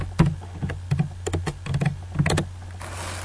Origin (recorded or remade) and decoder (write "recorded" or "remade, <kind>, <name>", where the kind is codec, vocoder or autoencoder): recorded